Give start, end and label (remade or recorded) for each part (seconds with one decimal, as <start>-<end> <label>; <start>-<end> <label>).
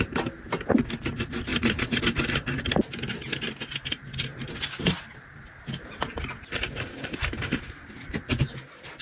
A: 0.0-1.5 recorded; 1.5-2.0 remade; 2.0-9.0 recorded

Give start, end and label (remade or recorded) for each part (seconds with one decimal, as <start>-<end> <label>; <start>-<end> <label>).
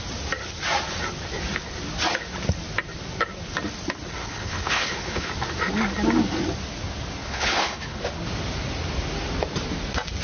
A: 0.0-4.2 recorded; 4.2-5.3 remade; 5.3-7.2 recorded; 7.2-8.0 remade; 8.0-10.2 recorded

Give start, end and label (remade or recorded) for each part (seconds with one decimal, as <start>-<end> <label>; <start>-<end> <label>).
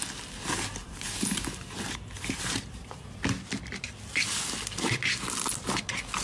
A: 0.0-0.8 recorded; 0.8-3.2 remade; 3.2-6.2 recorded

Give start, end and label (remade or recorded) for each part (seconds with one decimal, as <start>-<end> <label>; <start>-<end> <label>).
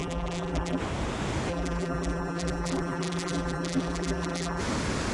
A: 0.0-0.8 remade; 0.8-1.5 recorded; 1.5-4.6 remade; 4.6-5.1 recorded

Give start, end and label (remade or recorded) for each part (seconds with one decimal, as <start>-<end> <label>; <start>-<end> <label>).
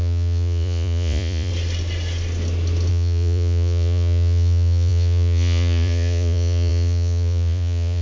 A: 0.0-1.5 remade; 1.5-2.9 recorded; 2.9-8.0 remade